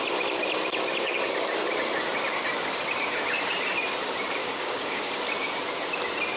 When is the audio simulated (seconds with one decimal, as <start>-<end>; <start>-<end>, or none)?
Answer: 4.4-5.1

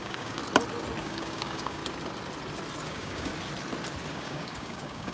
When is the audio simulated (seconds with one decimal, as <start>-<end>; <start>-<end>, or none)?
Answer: 0.0-0.4; 1.0-1.8; 2.9-3.3; 4.1-5.1